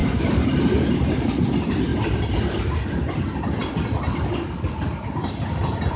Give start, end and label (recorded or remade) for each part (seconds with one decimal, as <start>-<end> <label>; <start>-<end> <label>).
0.0-6.0 recorded